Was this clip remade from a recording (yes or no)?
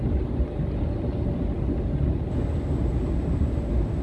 no